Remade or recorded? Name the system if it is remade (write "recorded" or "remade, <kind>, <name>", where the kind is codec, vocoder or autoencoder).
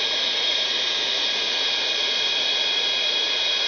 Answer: remade, vocoder, Vocos